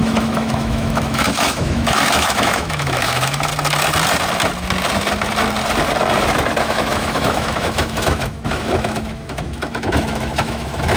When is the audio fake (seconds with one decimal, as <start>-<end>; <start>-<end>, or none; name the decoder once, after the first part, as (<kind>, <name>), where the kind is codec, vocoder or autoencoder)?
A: 0.0-3.5 (autoencoder, DAC-VAE); 6.6-11.0